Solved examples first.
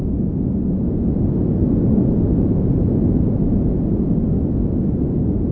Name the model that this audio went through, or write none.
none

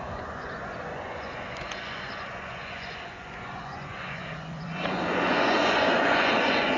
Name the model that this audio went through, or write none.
vocoder, Vocos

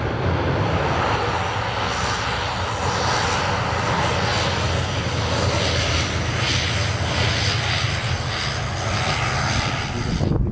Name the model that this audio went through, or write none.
none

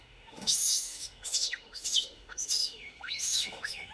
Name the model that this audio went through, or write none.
autoencoder, DAC-VAE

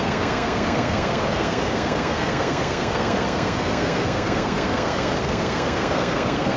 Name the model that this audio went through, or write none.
codec, SNAC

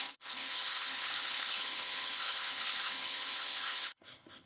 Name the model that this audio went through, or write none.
codec, HILCodec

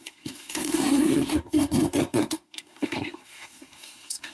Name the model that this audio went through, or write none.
codec, SNAC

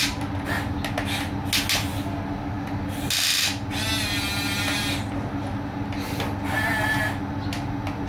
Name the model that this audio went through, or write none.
none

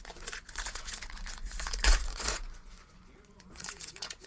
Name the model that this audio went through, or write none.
vocoder, Vocos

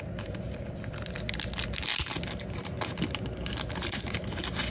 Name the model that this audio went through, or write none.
none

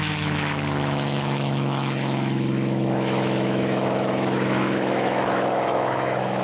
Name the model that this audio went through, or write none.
autoencoder, DAC-VAE